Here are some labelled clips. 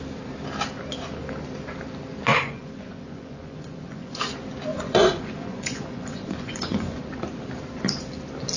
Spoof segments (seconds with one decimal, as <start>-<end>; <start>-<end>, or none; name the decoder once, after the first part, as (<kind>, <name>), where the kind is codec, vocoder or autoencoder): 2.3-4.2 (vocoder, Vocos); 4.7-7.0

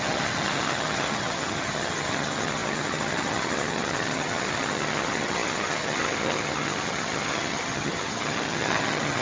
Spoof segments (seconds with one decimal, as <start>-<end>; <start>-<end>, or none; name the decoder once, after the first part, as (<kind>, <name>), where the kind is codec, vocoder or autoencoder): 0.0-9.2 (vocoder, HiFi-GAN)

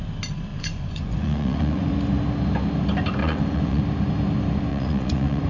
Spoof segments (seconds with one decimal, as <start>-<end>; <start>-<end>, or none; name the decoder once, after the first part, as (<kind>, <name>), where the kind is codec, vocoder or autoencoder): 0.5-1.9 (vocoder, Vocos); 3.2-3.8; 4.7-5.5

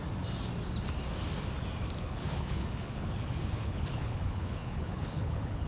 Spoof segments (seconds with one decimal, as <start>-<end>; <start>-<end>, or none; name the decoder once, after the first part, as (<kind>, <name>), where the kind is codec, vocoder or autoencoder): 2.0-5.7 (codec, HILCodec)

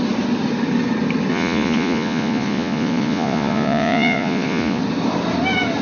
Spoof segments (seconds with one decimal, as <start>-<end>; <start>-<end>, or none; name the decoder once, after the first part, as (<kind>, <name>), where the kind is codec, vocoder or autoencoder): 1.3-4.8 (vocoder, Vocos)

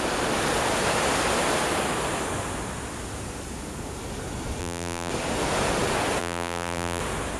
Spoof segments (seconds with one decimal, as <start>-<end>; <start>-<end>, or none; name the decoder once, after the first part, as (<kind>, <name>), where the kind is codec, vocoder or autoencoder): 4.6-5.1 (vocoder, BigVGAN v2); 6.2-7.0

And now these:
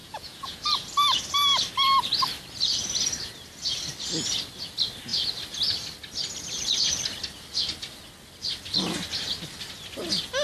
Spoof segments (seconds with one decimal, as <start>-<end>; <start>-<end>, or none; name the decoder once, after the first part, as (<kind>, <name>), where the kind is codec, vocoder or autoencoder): 0.0-0.6 (vocoder, Vocos)

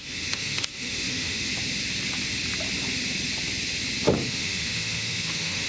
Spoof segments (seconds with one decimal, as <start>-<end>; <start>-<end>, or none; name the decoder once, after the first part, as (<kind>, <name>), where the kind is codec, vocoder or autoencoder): 0.0-1.5 (autoencoder, DAC-VAE); 4.2-5.7